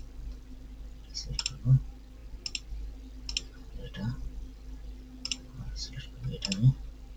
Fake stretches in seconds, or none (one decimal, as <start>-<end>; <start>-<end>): none

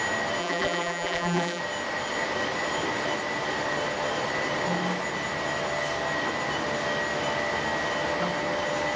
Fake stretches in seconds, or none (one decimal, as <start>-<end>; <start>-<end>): 0.4-1.6

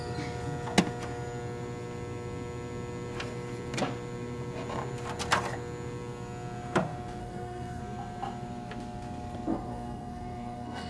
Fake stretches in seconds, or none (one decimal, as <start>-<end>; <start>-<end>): 7.2-7.8; 9.5-10.9

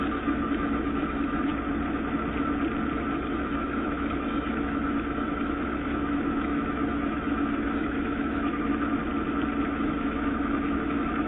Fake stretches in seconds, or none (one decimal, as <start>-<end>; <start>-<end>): 0.0-1.5; 3.3-8.7; 9.6-11.3

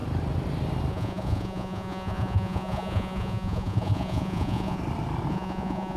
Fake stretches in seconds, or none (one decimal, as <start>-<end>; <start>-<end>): 0.9-4.8; 5.3-6.0

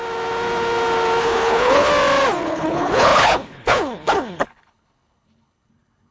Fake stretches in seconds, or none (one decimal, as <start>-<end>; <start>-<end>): 1.2-1.9; 2.4-6.1

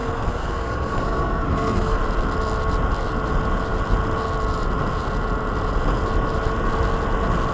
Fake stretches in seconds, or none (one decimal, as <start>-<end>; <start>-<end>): 0.0-2.0